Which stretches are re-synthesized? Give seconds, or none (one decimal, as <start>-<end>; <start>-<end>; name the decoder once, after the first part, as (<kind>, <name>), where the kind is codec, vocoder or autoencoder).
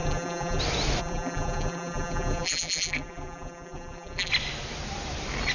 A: 0.0-0.6 (vocoder, BigVGAN v2); 1.0-4.3